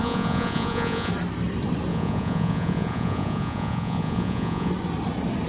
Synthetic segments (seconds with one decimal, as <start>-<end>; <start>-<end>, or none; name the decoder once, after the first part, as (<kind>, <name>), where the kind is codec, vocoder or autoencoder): 0.0-1.1 (vocoder, Vocos); 1.9-4.7